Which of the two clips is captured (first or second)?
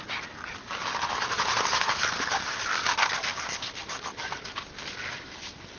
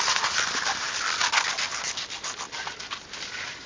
second